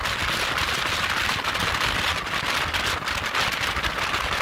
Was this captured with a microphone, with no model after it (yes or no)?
yes